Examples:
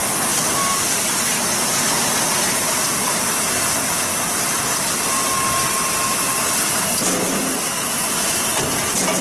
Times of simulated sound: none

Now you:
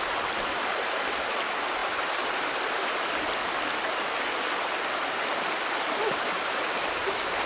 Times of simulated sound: none